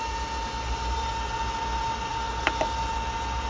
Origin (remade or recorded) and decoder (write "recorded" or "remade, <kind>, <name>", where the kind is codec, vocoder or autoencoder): recorded